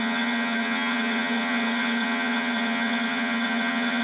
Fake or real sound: fake